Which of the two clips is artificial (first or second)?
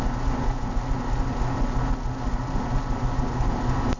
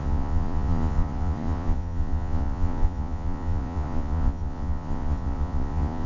second